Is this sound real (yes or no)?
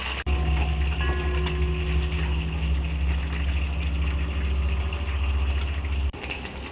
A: yes